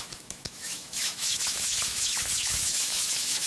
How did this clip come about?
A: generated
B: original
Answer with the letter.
A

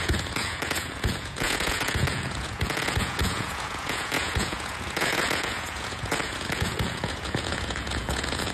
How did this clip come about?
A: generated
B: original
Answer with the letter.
A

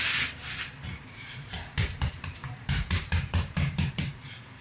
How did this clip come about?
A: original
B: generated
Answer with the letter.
B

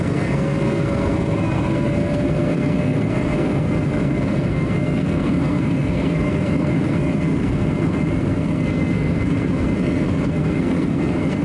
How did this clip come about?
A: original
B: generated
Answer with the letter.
B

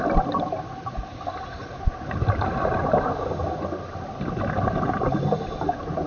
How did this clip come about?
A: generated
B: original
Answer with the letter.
B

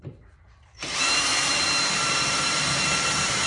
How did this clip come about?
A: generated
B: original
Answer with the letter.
A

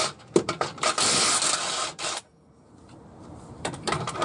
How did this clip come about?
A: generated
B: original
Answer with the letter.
A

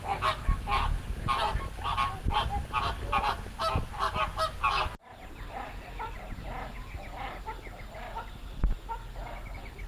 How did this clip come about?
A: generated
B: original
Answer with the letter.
B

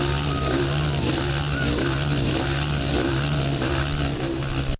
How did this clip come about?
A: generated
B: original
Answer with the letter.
B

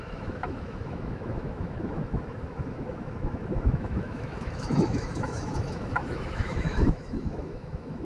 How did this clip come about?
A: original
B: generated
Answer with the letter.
B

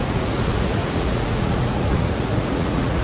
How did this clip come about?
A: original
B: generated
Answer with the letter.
B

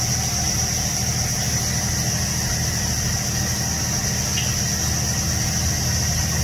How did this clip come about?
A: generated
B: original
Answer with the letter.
B